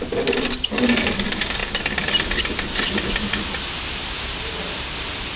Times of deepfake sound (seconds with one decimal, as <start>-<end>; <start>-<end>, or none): none